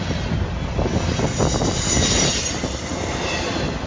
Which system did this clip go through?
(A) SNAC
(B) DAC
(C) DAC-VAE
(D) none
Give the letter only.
D